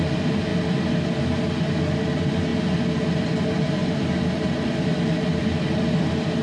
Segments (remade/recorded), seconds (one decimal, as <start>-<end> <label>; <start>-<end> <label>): 0.0-6.4 recorded